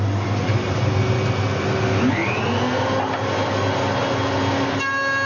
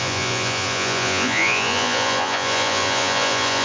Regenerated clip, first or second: second